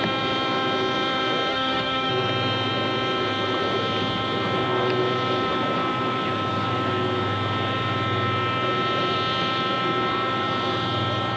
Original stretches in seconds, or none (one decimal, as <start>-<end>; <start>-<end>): 0.0-1.5; 2.1-11.4